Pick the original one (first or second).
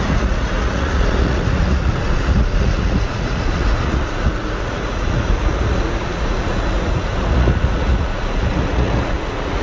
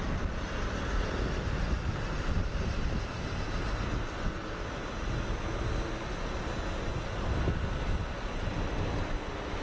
second